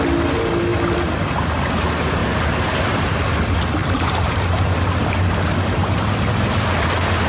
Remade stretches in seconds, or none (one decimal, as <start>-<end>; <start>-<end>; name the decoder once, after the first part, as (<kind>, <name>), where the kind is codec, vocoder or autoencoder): 2.2-3.2 (vocoder, BigVGAN v2); 3.8-4.9